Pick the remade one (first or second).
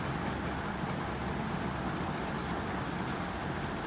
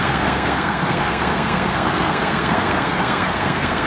second